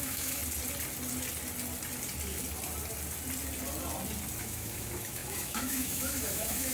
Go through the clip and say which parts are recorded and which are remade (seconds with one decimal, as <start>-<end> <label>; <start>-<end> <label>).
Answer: 0.0-0.4 remade; 0.4-4.4 recorded; 4.4-6.7 remade